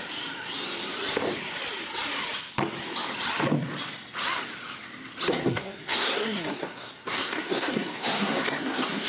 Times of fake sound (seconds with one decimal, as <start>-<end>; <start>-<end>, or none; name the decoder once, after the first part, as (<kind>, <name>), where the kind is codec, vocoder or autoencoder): 5.3-9.1 (codec, SNAC)